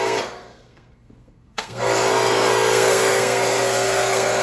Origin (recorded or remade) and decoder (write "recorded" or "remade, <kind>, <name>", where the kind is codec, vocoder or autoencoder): remade, codec, SNAC